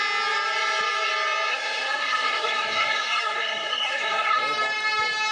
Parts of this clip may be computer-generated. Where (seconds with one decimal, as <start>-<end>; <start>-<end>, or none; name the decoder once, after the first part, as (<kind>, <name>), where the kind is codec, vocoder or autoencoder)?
1.5-4.4 (codec, SNAC)

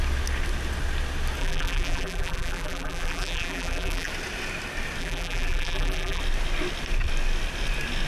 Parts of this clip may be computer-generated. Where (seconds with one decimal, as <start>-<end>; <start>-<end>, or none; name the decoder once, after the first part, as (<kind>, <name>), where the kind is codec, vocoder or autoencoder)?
1.4-4.1 (vocoder, BigVGAN v2); 5.0-6.2

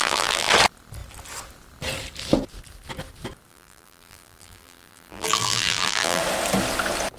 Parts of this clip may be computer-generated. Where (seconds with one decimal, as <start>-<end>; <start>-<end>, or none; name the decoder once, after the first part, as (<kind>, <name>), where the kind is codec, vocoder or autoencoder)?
0.0-0.5 (vocoder, BigVGAN v2); 3.5-6.2

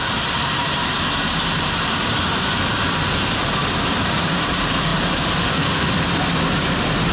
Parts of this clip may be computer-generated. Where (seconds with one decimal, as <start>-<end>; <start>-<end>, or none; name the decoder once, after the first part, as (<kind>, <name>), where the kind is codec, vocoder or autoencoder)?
0.0-0.6 (vocoder, BigVGAN v2); 2.2-4.9; 5.4-7.1

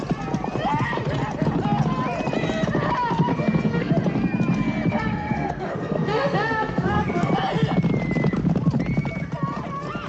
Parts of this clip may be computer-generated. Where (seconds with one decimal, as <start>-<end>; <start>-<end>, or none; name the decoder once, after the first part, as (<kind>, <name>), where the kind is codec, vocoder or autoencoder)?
3.3-3.9 (codec, SNAC); 4.9-7.3